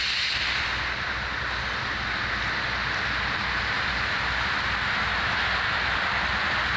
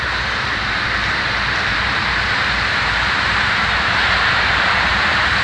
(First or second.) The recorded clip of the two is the first